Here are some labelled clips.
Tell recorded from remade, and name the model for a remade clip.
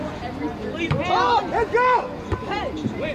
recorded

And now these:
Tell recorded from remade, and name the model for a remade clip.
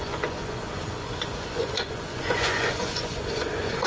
remade, vocoder, Vocos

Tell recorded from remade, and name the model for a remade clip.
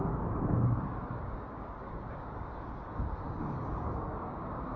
remade, codec, DAC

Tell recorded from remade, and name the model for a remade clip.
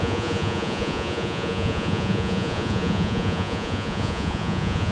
remade, vocoder, Vocos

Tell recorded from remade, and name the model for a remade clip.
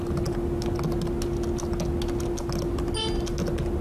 recorded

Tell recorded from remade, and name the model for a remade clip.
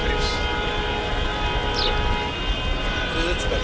recorded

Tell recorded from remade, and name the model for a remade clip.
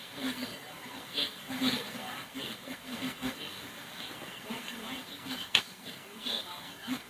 remade, codec, SNAC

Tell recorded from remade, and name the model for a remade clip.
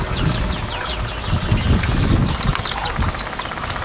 recorded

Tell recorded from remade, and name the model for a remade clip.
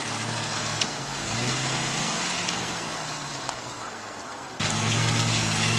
remade, codec, SNAC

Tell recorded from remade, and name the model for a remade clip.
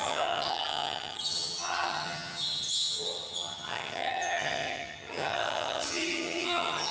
remade, vocoder, HiFi-GAN